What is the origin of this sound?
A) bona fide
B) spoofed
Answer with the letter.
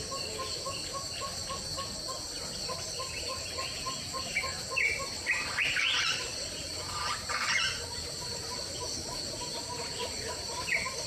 A